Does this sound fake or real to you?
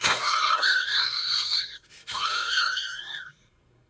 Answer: fake